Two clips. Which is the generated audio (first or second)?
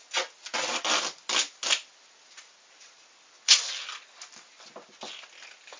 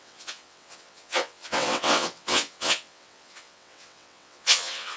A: second